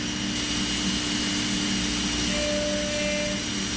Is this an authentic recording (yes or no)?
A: yes